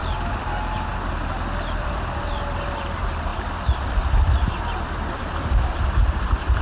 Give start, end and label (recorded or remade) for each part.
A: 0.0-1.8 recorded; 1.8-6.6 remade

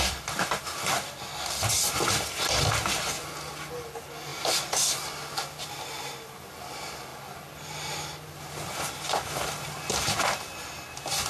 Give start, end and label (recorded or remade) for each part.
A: 0.0-11.3 recorded

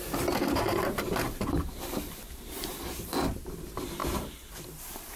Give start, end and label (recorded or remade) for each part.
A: 0.0-2.7 remade; 2.7-3.3 recorded; 3.3-5.2 remade